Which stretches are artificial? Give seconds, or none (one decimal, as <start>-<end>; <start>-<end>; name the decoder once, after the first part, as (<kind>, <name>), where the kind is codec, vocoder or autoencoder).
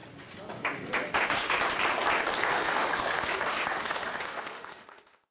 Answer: 1.2-1.6 (autoencoder, DAC-VAE); 2.4-5.3